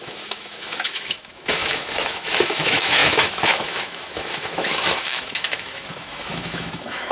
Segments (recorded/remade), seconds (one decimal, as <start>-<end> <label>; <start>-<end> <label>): 0.0-7.1 remade